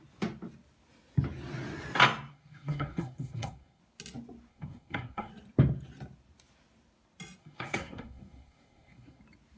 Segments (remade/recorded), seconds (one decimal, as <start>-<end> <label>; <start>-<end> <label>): 0.0-2.3 recorded; 2.3-3.8 remade; 3.8-4.5 recorded; 4.5-5.3 remade; 5.3-7.4 recorded; 7.4-9.2 remade; 9.2-9.6 recorded